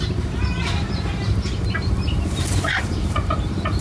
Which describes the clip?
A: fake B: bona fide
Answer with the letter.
A